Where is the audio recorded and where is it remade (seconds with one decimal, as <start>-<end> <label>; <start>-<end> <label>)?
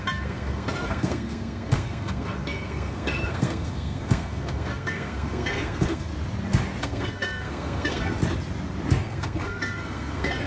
0.0-6.1 remade; 6.1-6.8 recorded; 6.8-8.2 remade; 8.2-9.0 recorded; 9.0-10.5 remade